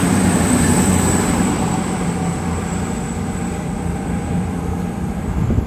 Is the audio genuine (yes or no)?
no